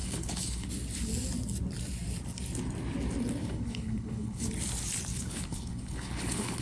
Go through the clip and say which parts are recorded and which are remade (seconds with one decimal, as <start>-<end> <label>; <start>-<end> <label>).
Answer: 0.0-0.7 remade; 0.7-3.4 recorded; 3.4-4.5 remade; 4.5-5.1 recorded; 5.1-6.6 remade